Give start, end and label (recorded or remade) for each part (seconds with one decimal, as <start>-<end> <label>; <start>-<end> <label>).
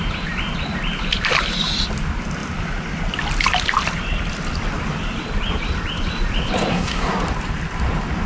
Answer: 0.0-6.7 recorded; 6.7-7.2 remade; 7.2-8.3 recorded